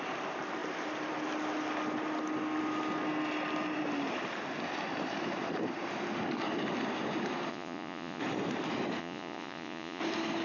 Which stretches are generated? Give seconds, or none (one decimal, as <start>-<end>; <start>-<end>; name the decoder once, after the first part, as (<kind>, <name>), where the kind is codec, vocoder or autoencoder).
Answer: 7.5-8.2 (vocoder, Vocos); 9.0-10.0